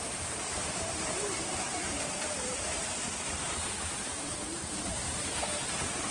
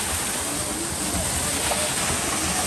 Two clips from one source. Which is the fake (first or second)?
first